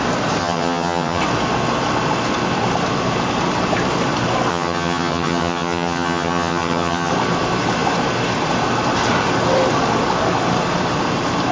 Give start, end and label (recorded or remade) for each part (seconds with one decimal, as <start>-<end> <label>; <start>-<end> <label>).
0.0-0.4 recorded; 0.4-1.2 remade; 1.2-4.5 recorded; 4.5-7.1 remade; 7.1-11.5 recorded